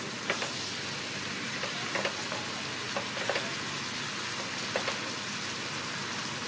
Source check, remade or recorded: recorded